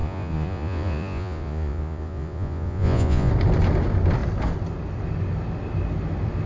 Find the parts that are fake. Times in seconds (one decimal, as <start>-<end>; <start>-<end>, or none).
0.0-3.3